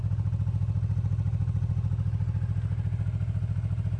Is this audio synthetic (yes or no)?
no